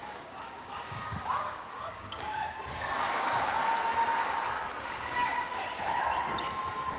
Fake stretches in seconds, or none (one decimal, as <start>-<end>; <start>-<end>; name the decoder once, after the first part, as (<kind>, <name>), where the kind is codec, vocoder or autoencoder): 0.0-3.6 (codec, DAC); 4.8-5.6